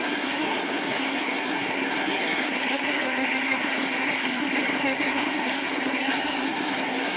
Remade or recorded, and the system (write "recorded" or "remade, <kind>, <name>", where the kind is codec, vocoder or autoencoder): remade, codec, SNAC